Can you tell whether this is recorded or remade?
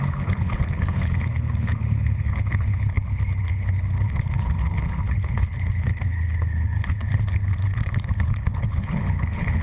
remade